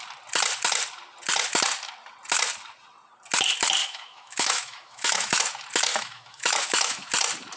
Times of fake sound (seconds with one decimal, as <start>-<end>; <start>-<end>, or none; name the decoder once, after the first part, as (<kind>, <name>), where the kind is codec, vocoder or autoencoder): 3.8-5.4 (autoencoder, DAC-VAE); 5.9-7.1